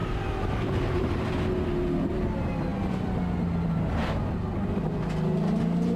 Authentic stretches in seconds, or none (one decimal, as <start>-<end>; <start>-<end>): 1.3-6.0